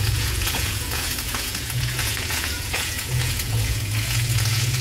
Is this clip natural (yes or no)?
no